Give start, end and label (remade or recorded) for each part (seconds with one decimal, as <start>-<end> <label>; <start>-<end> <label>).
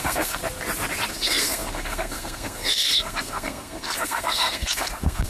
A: 0.0-0.4 remade; 0.4-1.1 recorded; 1.1-5.3 remade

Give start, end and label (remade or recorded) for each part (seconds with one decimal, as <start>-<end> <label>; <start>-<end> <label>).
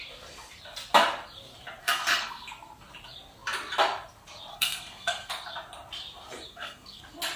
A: 0.0-1.8 recorded; 1.8-2.5 remade; 2.5-4.5 recorded; 4.5-5.3 remade; 5.3-6.5 recorded; 6.5-7.0 remade; 7.0-7.4 recorded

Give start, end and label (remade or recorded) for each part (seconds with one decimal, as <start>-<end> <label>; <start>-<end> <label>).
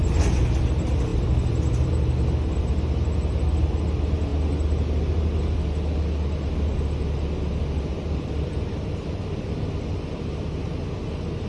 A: 0.0-1.1 recorded; 1.1-2.1 remade; 2.1-7.9 recorded; 7.9-8.5 remade; 8.5-11.5 recorded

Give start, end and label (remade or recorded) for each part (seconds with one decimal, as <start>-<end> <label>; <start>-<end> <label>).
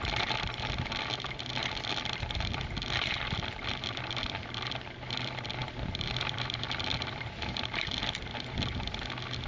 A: 0.0-1.6 recorded; 1.6-3.4 remade; 3.4-5.6 recorded; 5.6-7.8 remade; 7.8-9.5 recorded